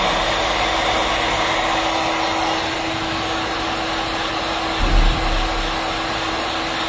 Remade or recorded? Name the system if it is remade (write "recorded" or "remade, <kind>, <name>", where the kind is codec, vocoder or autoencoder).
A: recorded